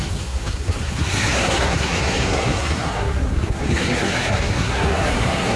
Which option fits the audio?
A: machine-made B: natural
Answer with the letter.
A